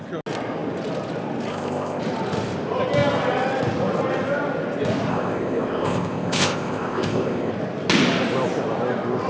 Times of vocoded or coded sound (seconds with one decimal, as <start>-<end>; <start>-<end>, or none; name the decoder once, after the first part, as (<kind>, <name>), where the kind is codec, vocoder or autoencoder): 1.5-2.0 (codec, ZipCodec); 5.1-7.5